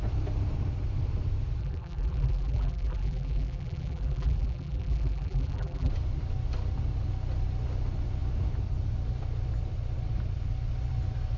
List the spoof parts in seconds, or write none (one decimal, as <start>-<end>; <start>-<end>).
1.6-5.9